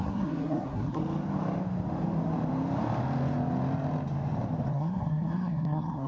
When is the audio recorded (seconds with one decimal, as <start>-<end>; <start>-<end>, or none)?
1.0-4.7